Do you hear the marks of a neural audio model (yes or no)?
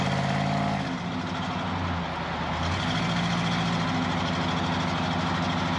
no